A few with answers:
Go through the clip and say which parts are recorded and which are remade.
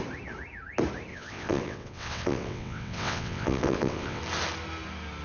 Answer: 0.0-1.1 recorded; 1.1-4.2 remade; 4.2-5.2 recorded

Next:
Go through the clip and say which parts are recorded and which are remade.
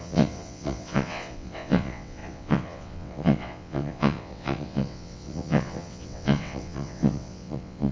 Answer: 0.0-7.9 remade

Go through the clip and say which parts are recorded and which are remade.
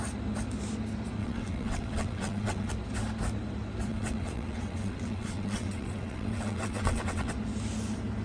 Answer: 0.0-1.2 recorded; 1.2-2.7 remade; 2.7-3.9 recorded; 3.9-7.3 remade; 7.3-8.2 recorded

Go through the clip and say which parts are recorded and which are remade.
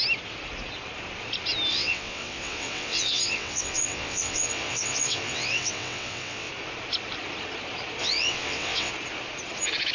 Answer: 0.0-1.7 recorded; 1.7-6.5 remade; 6.5-8.0 recorded; 8.0-8.9 remade; 8.9-9.9 recorded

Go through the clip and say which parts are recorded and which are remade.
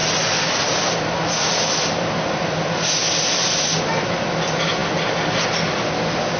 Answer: 0.0-6.4 recorded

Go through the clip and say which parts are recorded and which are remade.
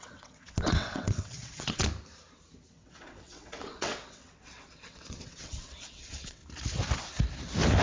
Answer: 0.0-1.9 remade; 1.9-2.7 recorded; 2.7-6.4 remade; 6.4-7.8 recorded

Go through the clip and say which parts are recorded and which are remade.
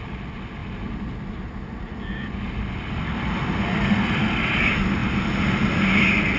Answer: 0.0-6.4 recorded